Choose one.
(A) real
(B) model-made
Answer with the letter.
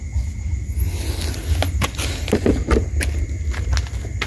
A